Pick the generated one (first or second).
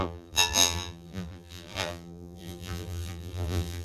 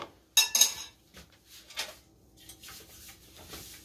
first